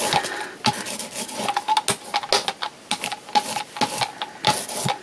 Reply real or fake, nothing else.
real